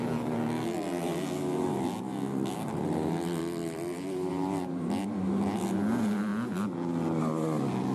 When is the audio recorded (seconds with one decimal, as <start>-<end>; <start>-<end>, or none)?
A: 0.0-7.9